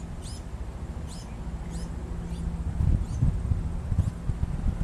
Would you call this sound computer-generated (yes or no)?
no